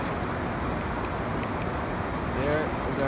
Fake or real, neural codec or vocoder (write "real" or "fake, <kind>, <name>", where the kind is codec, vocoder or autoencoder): real